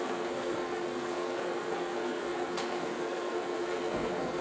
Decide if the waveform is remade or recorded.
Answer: remade